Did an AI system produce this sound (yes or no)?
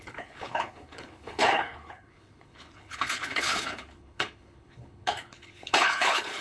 yes